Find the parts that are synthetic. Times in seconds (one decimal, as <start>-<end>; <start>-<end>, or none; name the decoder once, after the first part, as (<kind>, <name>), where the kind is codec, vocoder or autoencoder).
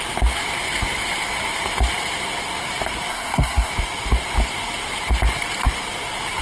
3.1-3.7 (codec, SNAC)